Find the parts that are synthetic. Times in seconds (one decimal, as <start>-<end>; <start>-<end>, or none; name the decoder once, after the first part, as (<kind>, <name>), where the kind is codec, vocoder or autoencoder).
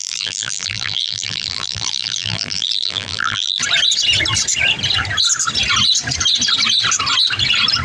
0.0-3.6 (vocoder, BigVGAN v2)